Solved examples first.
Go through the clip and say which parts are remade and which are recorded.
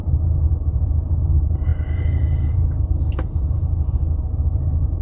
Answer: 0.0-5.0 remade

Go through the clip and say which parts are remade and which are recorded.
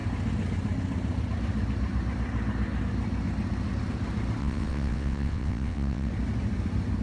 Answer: 0.0-4.4 recorded; 4.4-6.1 remade; 6.1-7.0 recorded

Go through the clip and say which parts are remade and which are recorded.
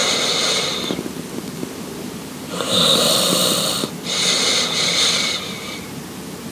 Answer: 0.0-3.9 remade; 3.9-4.5 recorded; 4.5-5.8 remade; 5.8-6.5 recorded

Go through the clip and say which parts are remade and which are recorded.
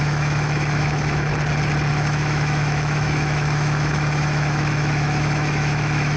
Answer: 0.0-1.3 remade; 1.3-1.9 recorded; 1.9-6.2 remade